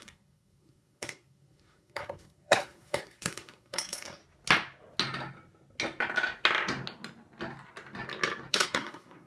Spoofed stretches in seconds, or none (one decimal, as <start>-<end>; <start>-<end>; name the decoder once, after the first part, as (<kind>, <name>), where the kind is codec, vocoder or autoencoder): 0.0-4.2 (codec, SNAC); 8.5-9.3